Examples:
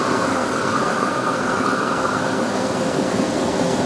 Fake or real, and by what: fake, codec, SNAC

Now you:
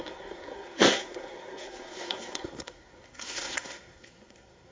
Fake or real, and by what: fake, codec, SNAC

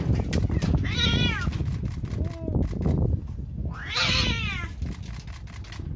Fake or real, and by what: real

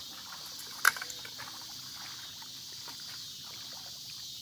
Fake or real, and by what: real